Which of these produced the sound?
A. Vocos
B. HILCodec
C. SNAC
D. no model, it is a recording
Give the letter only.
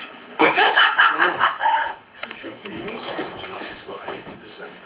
B